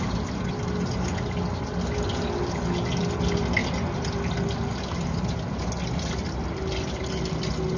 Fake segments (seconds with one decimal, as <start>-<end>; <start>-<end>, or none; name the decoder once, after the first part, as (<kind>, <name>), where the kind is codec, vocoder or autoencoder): none